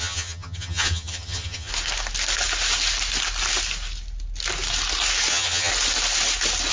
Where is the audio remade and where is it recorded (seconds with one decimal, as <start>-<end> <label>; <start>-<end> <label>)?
0.0-1.7 remade; 1.7-5.3 recorded; 5.3-5.7 remade; 5.7-6.7 recorded

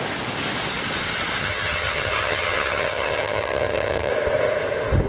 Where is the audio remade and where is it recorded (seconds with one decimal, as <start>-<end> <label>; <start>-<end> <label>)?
0.0-1.4 recorded; 1.4-4.1 remade; 4.1-5.1 recorded

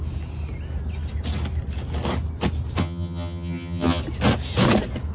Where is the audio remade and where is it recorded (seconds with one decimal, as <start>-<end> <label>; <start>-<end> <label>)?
0.0-2.8 recorded; 2.8-4.0 remade; 4.0-5.1 recorded